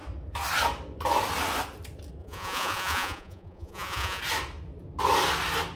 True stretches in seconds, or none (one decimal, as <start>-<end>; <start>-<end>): 0.0-2.2; 4.2-5.8